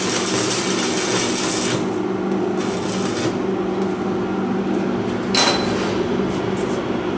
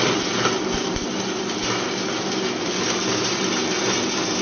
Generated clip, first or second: second